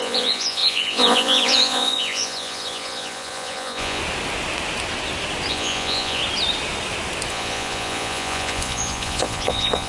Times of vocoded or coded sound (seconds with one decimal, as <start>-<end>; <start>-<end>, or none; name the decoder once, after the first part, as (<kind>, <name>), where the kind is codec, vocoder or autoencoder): 0.0-4.0 (vocoder, Vocos); 5.5-6.2; 7.3-9.9